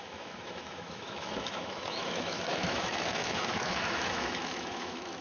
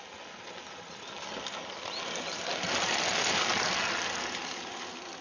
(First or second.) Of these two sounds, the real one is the second